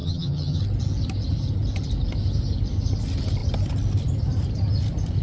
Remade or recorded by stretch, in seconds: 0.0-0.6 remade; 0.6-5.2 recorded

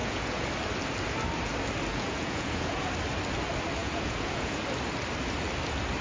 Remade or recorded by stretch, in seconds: 0.0-0.5 remade; 0.5-1.9 recorded; 1.9-2.9 remade; 2.9-3.8 recorded; 3.8-4.6 remade; 4.6-6.0 recorded

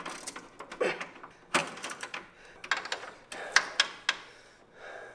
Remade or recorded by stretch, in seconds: 0.0-1.6 recorded; 1.6-2.2 remade; 2.2-5.1 recorded